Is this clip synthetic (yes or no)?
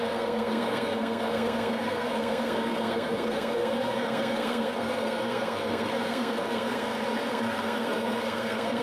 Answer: yes